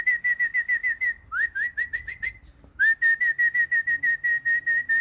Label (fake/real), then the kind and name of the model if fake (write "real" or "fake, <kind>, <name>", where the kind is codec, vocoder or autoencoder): real